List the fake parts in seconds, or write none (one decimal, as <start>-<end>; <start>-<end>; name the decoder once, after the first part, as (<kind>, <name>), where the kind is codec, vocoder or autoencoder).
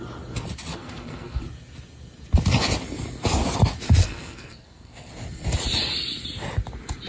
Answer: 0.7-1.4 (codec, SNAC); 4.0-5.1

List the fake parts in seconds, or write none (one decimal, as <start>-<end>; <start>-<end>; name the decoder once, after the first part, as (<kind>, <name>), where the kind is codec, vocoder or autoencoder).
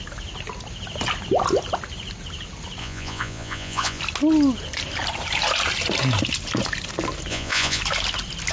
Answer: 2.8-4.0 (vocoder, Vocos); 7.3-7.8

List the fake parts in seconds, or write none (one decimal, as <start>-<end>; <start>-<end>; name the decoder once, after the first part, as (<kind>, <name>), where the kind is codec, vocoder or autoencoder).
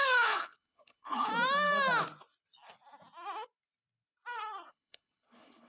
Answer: 0.0-1.3 (codec, HILCodec); 4.7-5.7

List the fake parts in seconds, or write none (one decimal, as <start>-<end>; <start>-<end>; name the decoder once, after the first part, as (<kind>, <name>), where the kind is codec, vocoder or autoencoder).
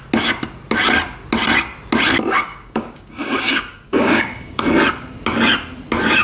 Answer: 2.5-4.6 (codec, DAC)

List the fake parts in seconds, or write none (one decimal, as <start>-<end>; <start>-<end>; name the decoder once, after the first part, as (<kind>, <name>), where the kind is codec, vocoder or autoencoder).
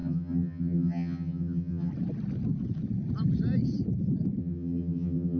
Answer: 0.0-1.9 (vocoder, HiFi-GAN); 4.4-5.4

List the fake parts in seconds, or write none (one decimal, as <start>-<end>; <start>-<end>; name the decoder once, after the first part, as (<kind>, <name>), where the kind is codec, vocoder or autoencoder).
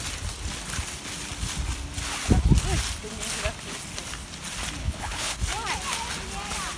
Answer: 4.8-5.4 (codec, HILCodec)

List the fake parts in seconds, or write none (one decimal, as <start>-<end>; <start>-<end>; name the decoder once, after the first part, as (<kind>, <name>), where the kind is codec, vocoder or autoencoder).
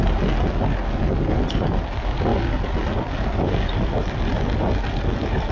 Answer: none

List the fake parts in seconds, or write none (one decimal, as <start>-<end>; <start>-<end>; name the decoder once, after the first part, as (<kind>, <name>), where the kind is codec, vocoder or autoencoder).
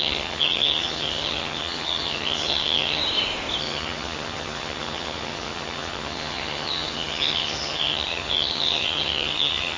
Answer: 0.0-3.0 (vocoder, HiFi-GAN); 3.6-9.8